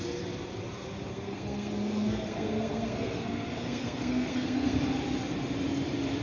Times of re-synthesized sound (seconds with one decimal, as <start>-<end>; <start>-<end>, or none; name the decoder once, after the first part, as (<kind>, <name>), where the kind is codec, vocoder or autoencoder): 1.1-4.8 (codec, SNAC)